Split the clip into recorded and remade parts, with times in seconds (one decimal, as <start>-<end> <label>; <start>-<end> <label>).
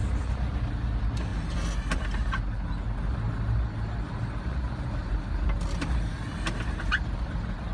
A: 0.0-7.7 recorded